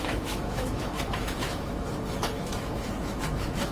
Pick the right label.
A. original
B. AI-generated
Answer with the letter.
B